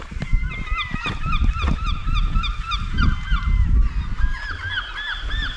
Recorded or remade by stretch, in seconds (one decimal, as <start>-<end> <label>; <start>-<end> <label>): 0.0-5.6 recorded